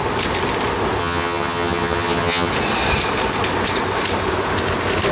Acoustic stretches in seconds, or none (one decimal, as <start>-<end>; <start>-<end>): 0.0-1.0; 2.5-5.1